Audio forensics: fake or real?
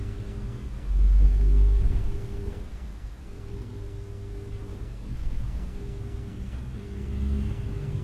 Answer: fake